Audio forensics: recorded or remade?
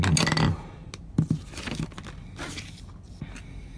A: recorded